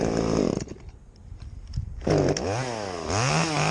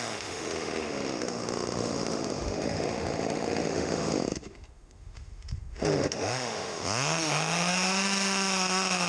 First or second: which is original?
first